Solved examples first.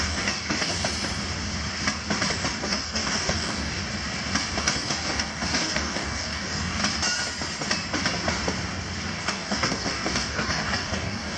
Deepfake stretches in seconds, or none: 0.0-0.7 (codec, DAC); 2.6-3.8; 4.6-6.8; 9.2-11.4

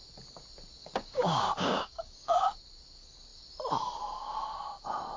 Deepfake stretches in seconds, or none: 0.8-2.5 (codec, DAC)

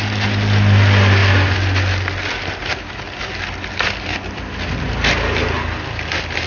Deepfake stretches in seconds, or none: none